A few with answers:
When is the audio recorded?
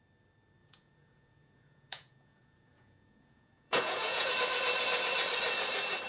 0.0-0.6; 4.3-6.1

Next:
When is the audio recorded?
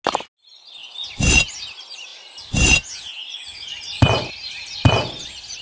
0.0-5.6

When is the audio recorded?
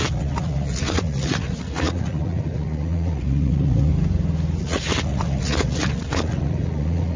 3.9-4.6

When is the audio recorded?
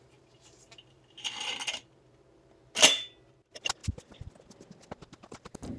0.0-5.8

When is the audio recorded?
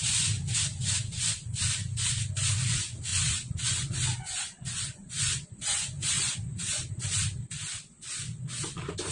0.0-3.1; 6.9-9.1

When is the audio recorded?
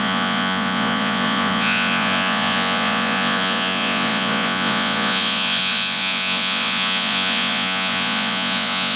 none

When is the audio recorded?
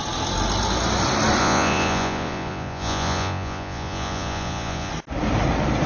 0.0-1.4; 4.9-5.9